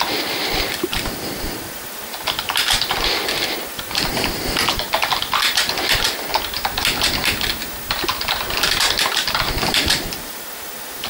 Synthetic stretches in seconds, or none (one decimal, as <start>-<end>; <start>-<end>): 0.0-6.3; 9.0-11.1